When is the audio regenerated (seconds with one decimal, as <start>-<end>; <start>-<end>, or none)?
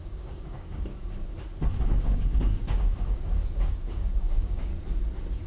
0.0-0.9; 2.0-4.7